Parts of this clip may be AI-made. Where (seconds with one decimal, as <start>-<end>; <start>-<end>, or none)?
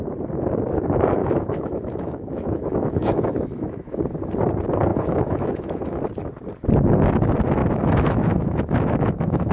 1.2-4.0; 4.9-6.0; 7.6-9.5